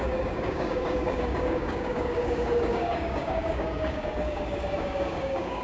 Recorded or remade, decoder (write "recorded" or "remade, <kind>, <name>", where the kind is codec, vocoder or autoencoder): remade, codec, DAC